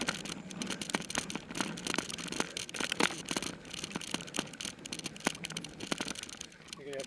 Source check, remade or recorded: recorded